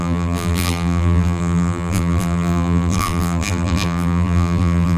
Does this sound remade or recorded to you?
remade